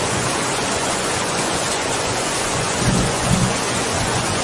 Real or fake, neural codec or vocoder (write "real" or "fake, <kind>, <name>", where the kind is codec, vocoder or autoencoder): fake, vocoder, Vocos